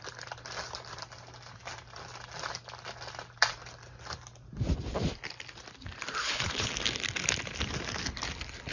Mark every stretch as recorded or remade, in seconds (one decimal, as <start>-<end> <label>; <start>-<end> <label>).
0.0-6.2 recorded; 6.2-6.7 remade; 6.7-8.7 recorded